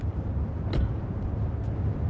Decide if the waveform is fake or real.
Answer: real